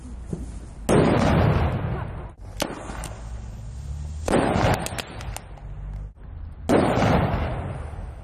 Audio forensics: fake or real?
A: real